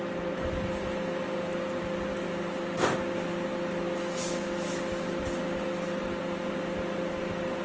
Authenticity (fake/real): real